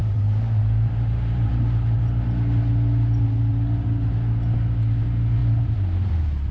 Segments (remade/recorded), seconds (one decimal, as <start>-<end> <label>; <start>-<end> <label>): 0.0-1.5 remade; 1.5-5.4 recorded; 5.4-6.1 remade; 6.1-6.5 recorded